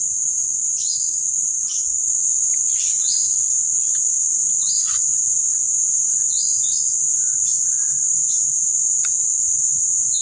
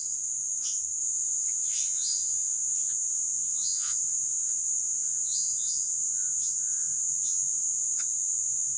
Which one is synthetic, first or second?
second